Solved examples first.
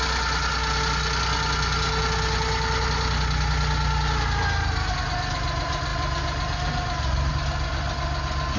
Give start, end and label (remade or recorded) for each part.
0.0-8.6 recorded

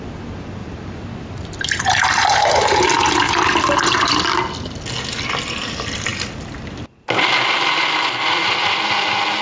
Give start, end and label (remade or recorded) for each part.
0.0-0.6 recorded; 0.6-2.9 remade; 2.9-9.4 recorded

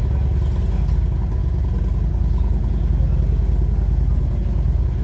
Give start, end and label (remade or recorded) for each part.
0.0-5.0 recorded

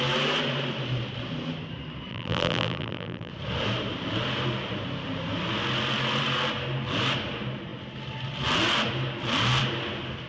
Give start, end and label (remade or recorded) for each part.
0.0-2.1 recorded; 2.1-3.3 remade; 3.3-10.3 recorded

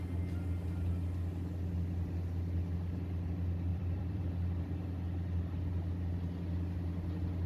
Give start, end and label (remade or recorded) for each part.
0.0-3.7 recorded; 3.7-4.2 remade; 4.2-7.5 recorded

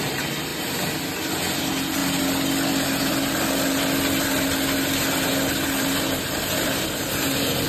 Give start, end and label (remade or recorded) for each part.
0.0-0.5 remade; 0.5-1.6 recorded; 1.6-2.0 remade; 2.0-5.8 recorded; 5.8-7.7 remade

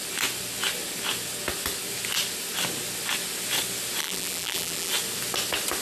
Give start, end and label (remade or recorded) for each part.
0.0-4.0 recorded; 4.0-4.9 remade; 4.9-5.8 recorded